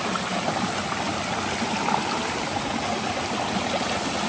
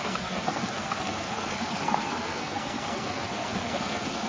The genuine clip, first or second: first